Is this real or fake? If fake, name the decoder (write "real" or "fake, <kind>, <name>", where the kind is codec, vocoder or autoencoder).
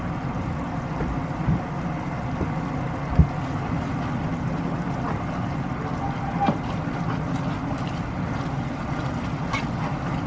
real